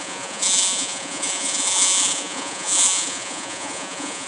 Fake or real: fake